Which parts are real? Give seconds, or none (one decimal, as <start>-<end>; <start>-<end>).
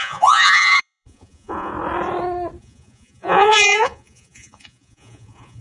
1.7-2.6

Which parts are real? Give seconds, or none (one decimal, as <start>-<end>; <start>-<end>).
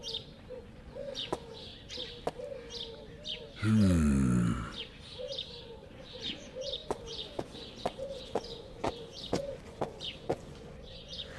0.0-0.5; 1.7-5.6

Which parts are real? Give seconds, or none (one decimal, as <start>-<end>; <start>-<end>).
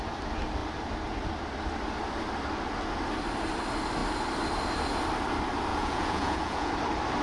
0.0-5.7; 6.7-7.2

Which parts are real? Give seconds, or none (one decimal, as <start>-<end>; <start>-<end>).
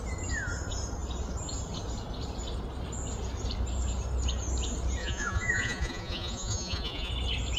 0.0-5.0; 7.1-7.6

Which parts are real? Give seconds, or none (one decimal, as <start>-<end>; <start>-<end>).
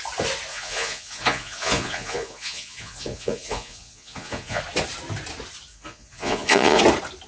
0.0-0.5; 4.6-5.7; 6.8-7.3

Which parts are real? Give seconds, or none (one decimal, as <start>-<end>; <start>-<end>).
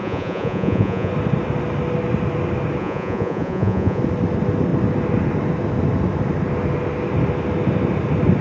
1.1-2.8; 4.0-8.4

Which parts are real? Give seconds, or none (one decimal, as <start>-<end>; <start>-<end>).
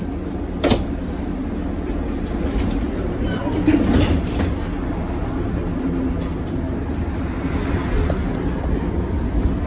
0.0-9.7